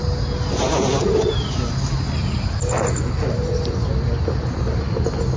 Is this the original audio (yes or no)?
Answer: yes